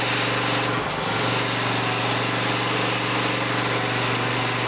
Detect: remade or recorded recorded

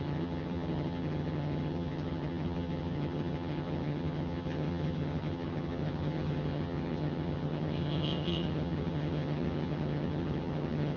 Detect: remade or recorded remade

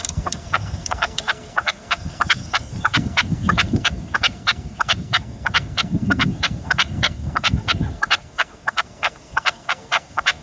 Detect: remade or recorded remade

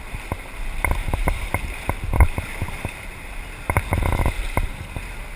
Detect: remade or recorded recorded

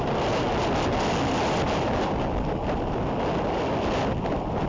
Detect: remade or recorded recorded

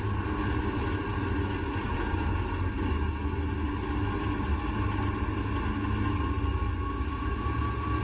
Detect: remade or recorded recorded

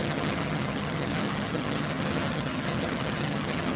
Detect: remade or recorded remade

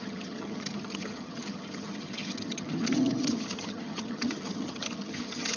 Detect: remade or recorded remade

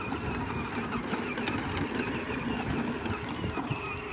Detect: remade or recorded recorded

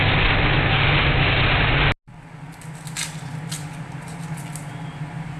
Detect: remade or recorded recorded